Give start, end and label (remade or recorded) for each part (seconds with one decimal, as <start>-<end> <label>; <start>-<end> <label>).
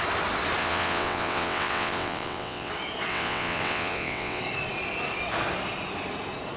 0.0-0.6 recorded; 0.6-2.7 remade; 2.7-3.1 recorded; 3.1-4.4 remade; 4.4-6.6 recorded